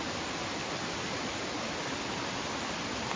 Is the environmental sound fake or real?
real